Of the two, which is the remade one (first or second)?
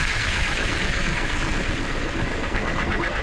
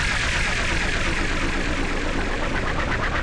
first